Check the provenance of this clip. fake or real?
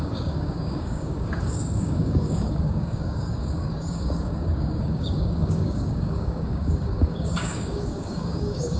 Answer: fake